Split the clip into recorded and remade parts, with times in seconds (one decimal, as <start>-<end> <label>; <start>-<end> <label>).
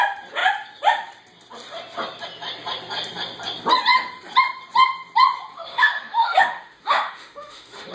0.0-5.5 recorded; 5.5-7.9 remade